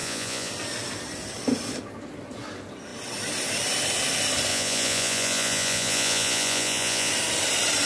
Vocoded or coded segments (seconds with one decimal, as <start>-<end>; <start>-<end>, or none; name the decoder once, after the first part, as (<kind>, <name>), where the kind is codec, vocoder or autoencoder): 0.0-0.5 (vocoder, Vocos); 4.5-7.1